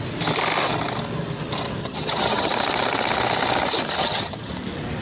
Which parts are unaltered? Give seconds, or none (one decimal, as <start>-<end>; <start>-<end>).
0.0-1.8; 2.5-4.0; 4.5-5.0